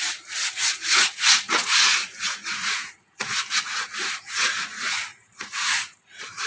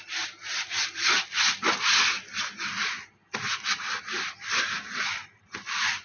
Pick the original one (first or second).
second